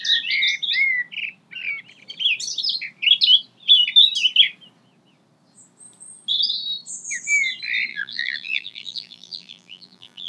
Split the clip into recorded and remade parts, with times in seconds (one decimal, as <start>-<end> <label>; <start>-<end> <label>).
0.0-7.9 recorded; 7.9-10.3 remade